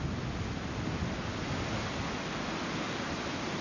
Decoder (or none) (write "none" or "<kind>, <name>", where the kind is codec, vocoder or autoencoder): none